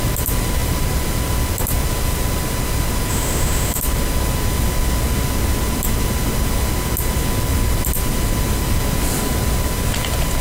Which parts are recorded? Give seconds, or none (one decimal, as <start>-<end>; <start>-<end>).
0.0-3.1; 3.8-10.4